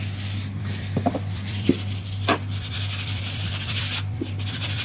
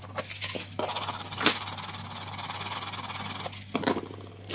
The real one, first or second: second